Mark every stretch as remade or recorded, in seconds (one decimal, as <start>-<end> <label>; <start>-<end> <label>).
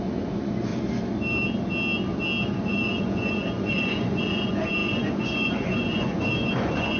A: 0.0-0.7 remade; 0.7-2.4 recorded; 2.4-7.0 remade